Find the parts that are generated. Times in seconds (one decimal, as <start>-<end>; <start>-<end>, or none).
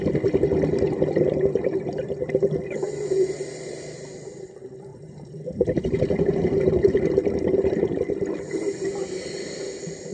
4.9-7.7